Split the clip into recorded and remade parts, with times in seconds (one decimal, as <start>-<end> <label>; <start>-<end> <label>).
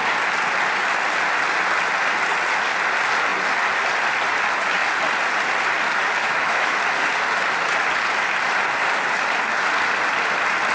0.0-6.2 recorded; 6.2-6.8 remade; 6.8-10.7 recorded